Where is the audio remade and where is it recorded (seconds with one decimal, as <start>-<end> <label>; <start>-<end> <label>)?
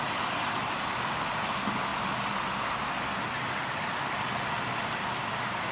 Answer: 0.0-5.7 recorded